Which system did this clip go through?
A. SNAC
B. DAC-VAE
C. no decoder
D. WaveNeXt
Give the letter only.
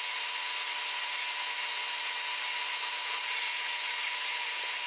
C